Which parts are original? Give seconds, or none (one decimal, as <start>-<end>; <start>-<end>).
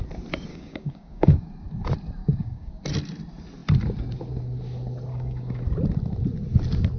0.0-0.5; 1.5-2.2; 2.7-5.1; 5.6-7.0